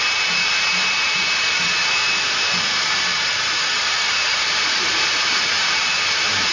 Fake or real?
fake